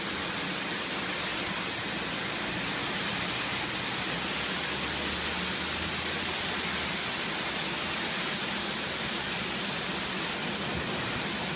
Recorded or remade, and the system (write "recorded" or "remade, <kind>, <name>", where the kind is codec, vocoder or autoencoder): recorded